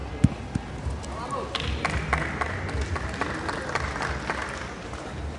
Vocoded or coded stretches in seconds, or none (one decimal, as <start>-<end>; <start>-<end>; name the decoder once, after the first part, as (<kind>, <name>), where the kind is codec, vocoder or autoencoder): none